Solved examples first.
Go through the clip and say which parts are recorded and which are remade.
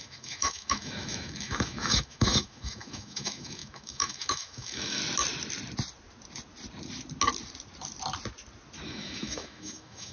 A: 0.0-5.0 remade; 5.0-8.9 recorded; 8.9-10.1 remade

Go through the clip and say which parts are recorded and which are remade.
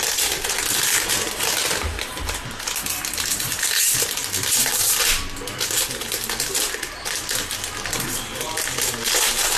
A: 0.0-9.6 recorded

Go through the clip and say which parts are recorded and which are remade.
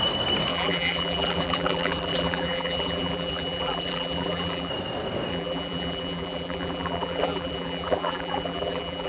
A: 0.0-0.5 recorded; 0.5-4.7 remade; 4.7-5.3 recorded; 5.3-9.1 remade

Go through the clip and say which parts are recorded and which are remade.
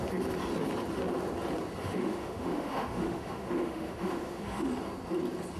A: 0.0-1.8 recorded; 1.8-4.7 remade; 4.7-5.6 recorded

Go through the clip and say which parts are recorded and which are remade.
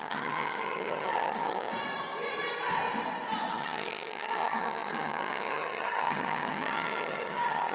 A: 0.0-1.7 remade; 1.7-3.5 recorded; 3.5-7.7 remade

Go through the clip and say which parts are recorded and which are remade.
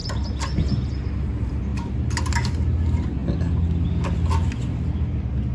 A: 0.0-5.5 recorded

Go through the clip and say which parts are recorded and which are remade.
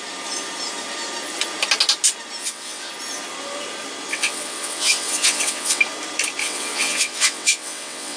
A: 0.0-2.4 recorded; 2.4-2.9 remade; 2.9-4.1 recorded; 4.1-5.8 remade; 5.8-6.4 recorded; 6.4-8.2 remade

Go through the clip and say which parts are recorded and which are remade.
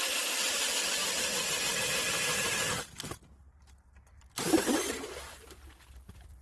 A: 0.0-1.0 remade; 1.0-4.2 recorded; 4.2-6.4 remade